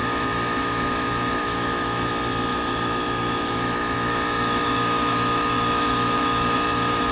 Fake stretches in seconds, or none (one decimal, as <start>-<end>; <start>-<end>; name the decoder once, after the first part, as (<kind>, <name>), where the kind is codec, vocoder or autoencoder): 0.0-2.1 (autoencoder, DAC-VAE); 2.5-7.1